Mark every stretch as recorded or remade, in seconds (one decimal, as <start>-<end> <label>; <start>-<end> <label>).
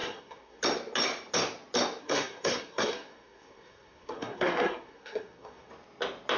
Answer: 0.0-0.6 remade; 0.6-2.0 recorded; 2.0-5.7 remade; 5.7-6.4 recorded